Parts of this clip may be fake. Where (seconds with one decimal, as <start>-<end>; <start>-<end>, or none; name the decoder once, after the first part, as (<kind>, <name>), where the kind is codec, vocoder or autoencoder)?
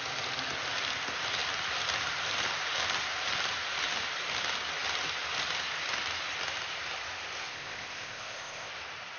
7.5-8.7 (codec, ZipCodec)